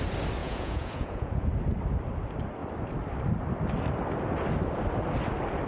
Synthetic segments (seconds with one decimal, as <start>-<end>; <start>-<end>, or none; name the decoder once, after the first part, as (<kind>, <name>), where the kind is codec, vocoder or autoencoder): 0.4-1.5 (vocoder, Vocos)

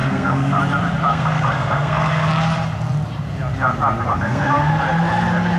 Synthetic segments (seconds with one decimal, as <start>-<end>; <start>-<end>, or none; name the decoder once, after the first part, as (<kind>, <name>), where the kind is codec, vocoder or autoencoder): 0.0-0.6 (codec, SNAC); 1.1-2.3; 4.1-4.7